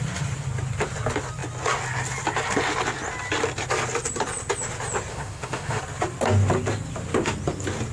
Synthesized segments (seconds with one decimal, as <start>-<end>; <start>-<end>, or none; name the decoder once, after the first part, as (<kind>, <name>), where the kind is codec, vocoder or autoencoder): 5.1-5.8 (autoencoder, DAC-VAE)